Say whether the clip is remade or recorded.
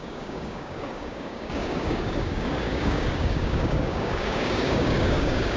remade